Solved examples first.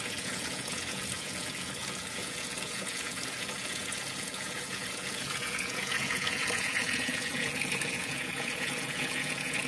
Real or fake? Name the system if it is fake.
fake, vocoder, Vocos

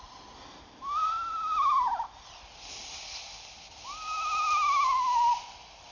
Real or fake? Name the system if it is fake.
real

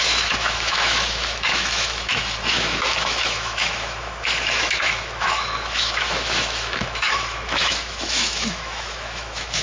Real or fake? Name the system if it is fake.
fake, autoencoder, DAC-VAE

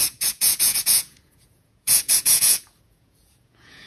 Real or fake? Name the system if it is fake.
fake, vocoder, Vocos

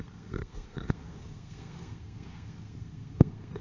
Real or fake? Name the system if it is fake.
fake, codec, SNAC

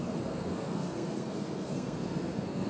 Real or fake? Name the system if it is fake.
fake, codec, SNAC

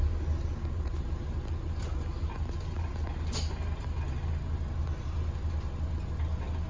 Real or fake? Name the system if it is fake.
real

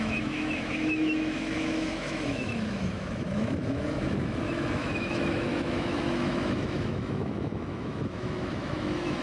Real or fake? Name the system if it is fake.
fake, autoencoder, DAC-VAE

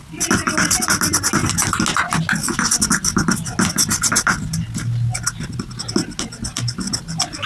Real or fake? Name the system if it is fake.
real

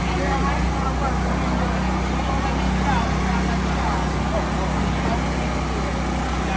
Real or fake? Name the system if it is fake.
real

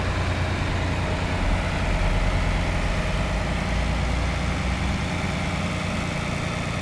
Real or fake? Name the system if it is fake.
real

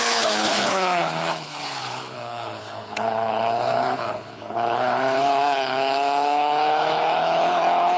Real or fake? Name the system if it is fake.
fake, codec, HILCodec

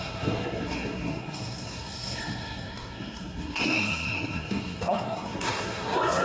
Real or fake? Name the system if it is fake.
fake, codec, SNAC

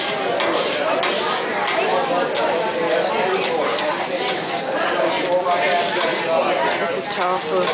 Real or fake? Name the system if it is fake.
real